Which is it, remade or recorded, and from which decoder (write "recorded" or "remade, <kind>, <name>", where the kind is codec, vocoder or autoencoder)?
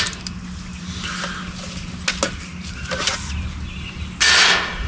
recorded